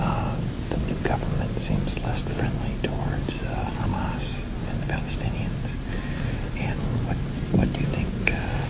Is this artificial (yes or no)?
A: no